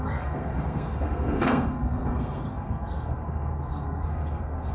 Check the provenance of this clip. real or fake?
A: fake